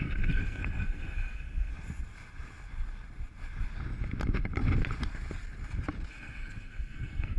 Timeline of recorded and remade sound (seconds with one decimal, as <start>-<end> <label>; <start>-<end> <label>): 0.0-1.7 remade; 1.7-6.1 recorded; 6.1-7.4 remade